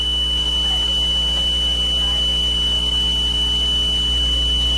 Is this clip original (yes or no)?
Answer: yes